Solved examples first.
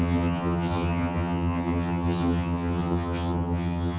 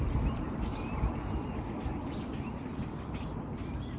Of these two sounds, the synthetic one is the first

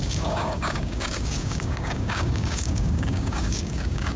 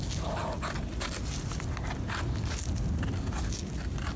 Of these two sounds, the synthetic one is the first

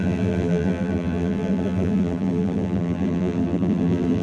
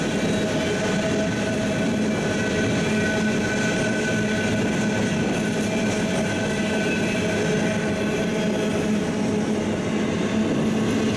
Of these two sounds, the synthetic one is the first